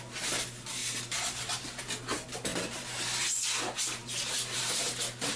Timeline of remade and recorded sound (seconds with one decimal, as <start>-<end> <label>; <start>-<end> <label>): 0.0-0.8 recorded; 0.8-1.6 remade; 1.6-5.4 recorded